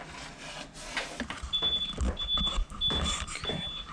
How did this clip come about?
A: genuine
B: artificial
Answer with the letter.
A